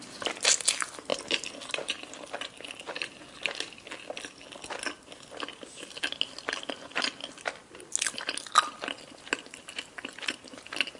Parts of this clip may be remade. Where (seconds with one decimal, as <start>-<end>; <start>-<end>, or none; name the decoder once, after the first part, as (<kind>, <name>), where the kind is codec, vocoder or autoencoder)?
none